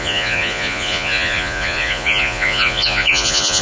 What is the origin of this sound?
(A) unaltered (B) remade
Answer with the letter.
B